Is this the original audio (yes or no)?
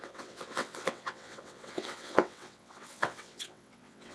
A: no